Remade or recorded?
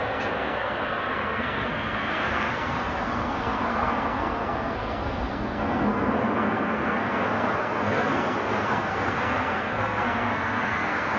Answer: remade